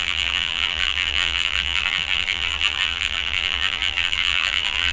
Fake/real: fake